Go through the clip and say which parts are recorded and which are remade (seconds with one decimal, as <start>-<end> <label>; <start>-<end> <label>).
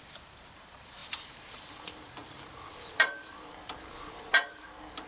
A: 0.0-5.1 remade